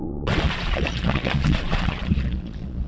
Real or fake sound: fake